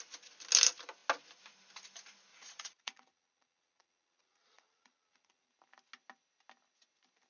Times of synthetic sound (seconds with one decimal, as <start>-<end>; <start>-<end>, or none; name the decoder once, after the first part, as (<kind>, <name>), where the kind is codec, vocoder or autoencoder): 2.3-5.5 (vocoder, Vocos)